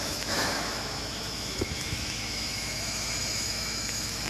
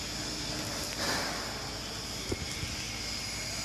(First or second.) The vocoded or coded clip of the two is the first